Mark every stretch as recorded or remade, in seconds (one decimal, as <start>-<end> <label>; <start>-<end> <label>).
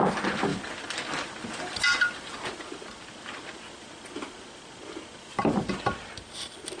0.0-6.8 recorded